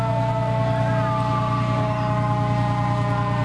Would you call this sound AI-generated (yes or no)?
no